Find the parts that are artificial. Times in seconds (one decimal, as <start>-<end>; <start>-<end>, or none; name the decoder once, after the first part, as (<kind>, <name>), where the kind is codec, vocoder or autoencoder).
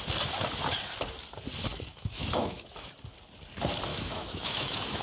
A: 1.7-2.9 (autoencoder, DAC-VAE); 3.9-5.0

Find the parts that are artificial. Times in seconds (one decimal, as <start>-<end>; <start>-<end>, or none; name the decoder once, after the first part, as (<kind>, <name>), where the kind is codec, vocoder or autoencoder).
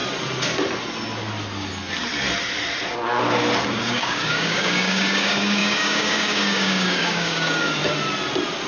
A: 3.7-7.8 (codec, DAC)